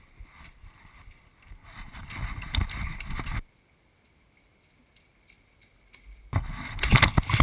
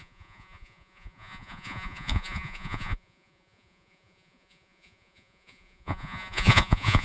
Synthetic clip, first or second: second